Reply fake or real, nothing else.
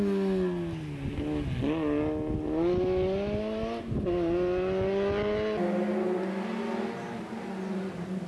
real